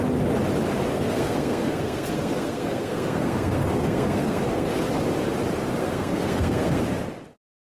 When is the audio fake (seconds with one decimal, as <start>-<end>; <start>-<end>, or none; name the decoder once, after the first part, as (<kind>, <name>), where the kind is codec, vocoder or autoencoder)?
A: 0.9-4.7 (codec, SNAC); 5.8-6.8